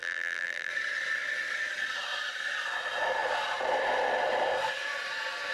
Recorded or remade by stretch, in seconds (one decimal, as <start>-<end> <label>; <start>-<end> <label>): 0.0-0.7 remade; 0.7-5.5 recorded